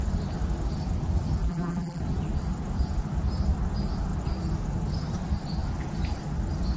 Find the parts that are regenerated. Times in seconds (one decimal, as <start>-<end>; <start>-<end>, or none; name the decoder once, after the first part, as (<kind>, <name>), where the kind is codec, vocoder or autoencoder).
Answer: 1.4-2.0 (vocoder, BigVGAN v2)